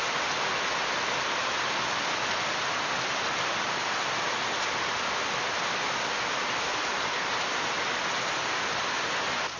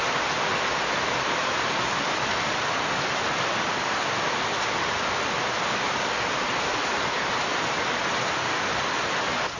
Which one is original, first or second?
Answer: first